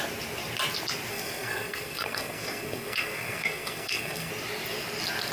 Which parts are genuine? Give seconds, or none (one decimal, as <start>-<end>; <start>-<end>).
0.0-1.1; 4.3-5.3